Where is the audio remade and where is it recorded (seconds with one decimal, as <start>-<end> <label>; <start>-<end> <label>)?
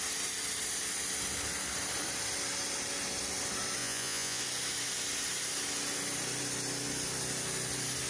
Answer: 0.0-3.8 recorded; 3.8-4.4 remade; 4.4-8.1 recorded